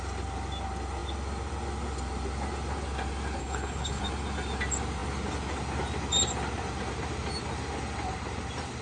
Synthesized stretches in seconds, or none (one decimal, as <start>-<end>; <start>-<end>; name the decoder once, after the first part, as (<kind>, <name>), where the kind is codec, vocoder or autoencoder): 3.4-4.0 (codec, HILCodec)